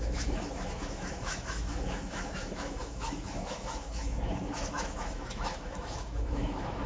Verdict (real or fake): fake